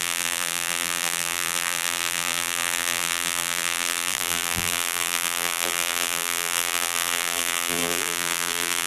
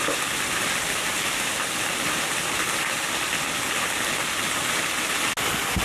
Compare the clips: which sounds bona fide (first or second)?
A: second